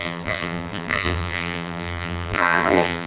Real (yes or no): no